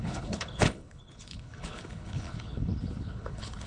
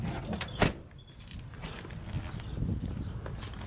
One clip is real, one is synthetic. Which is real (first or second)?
second